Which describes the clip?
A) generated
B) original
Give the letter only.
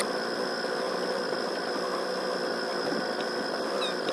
B